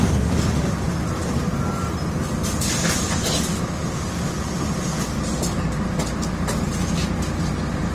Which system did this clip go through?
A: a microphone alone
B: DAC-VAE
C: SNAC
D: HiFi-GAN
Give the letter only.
A